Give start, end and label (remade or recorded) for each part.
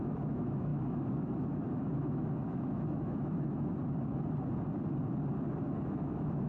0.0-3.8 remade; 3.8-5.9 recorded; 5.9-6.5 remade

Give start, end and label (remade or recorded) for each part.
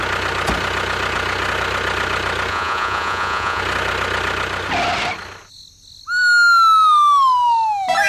0.0-2.5 recorded; 2.5-3.6 remade; 3.6-8.1 recorded